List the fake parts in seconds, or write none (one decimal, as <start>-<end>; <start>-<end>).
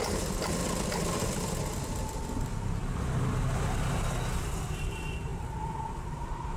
0.0-0.6; 2.4-2.8; 4.4-6.6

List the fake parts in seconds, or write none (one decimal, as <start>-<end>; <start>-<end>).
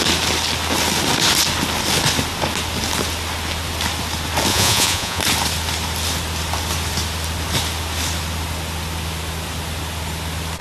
4.5-5.2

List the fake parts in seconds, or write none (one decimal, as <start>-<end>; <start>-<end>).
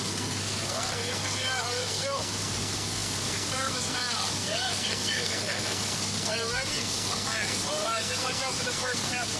0.0-9.4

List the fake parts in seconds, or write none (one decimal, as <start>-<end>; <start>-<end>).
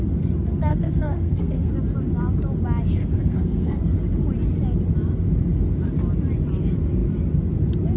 0.7-1.7; 3.0-3.8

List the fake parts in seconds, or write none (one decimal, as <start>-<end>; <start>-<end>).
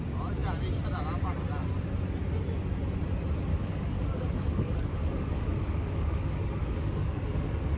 3.5-7.8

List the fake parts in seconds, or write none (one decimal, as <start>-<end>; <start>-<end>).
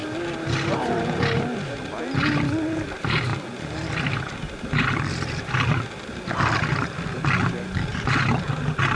none